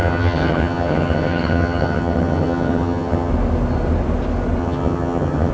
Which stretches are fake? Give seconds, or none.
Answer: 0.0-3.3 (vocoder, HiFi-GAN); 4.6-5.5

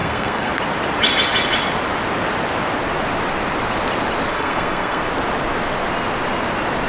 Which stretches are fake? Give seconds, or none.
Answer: 0.0-0.5 (codec, SNAC); 4.3-5.0

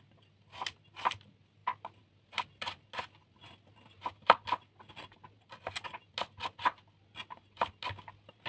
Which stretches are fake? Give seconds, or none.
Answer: none

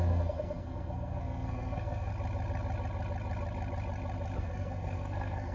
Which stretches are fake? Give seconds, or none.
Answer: 0.0-2.1 (codec, SNAC); 4.4-5.5

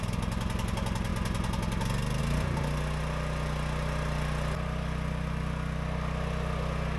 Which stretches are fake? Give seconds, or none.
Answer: none

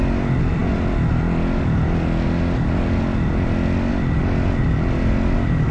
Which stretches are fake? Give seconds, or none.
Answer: none